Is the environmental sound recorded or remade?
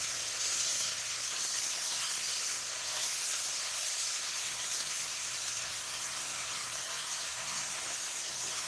remade